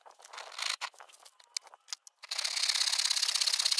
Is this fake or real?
real